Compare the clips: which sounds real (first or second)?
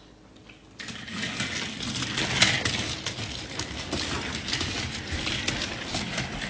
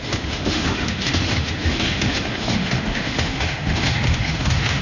first